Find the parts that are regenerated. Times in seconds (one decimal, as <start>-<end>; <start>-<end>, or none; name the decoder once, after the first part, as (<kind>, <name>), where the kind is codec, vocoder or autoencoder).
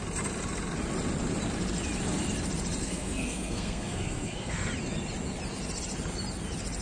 2.8-4.7 (codec, SNAC)